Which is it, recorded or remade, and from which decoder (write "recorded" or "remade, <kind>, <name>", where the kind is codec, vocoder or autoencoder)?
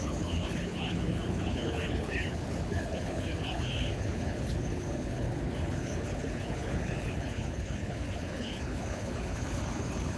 remade, codec, HILCodec